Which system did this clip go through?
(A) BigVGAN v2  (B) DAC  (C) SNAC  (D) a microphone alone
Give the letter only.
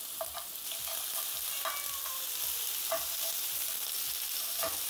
D